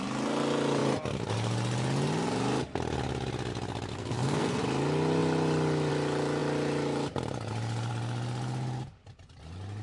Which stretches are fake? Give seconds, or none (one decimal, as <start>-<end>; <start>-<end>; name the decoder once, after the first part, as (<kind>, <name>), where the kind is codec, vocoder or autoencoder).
3.9-4.6 (codec, SNAC)